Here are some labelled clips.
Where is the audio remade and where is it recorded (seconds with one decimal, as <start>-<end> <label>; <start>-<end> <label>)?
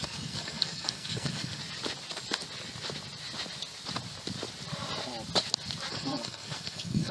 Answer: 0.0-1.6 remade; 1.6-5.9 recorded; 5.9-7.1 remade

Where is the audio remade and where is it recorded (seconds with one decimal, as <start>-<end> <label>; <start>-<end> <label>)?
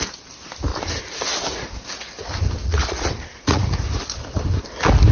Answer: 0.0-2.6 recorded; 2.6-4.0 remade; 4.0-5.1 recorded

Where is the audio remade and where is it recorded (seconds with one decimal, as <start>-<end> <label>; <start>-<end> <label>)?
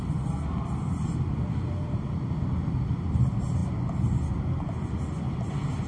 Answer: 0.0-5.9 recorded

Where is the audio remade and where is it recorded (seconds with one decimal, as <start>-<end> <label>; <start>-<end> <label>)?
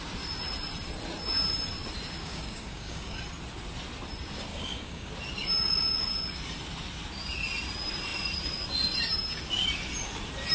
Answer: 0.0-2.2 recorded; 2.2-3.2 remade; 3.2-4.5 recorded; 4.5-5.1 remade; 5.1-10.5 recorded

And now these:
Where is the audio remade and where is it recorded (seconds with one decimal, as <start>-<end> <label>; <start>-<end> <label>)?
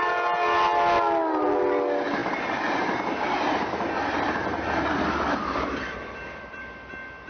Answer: 0.0-7.3 recorded